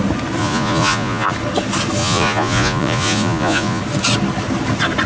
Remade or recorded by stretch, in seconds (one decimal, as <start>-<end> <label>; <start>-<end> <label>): 0.0-0.4 recorded; 0.4-1.3 remade; 1.3-2.0 recorded; 2.0-3.8 remade; 3.8-5.1 recorded